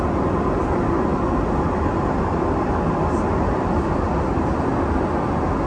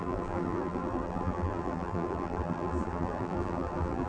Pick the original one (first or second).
first